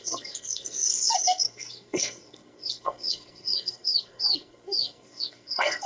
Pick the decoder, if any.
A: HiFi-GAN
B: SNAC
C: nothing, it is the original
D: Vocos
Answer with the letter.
B